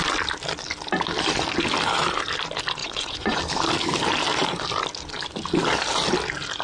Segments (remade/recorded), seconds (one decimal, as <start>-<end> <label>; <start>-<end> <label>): 0.0-2.8 recorded; 2.8-3.4 remade; 3.4-6.6 recorded